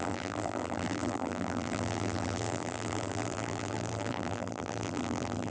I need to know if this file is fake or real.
fake